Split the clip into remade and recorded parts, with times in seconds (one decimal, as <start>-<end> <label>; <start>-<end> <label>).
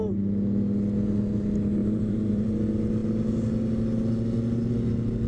0.0-1.8 recorded; 1.8-2.5 remade; 2.5-5.3 recorded